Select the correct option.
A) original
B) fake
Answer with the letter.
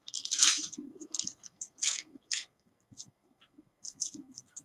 B